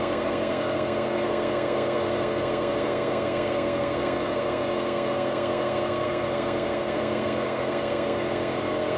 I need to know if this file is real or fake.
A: fake